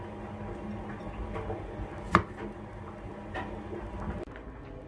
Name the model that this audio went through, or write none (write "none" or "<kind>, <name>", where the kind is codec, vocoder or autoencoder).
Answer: none